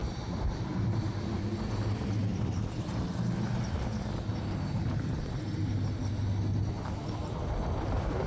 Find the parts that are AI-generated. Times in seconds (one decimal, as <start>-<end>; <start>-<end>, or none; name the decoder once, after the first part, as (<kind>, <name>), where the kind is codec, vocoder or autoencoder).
0.0-0.7 (vocoder, BigVGAN v2); 4.3-5.7